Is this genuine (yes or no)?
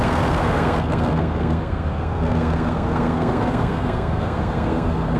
no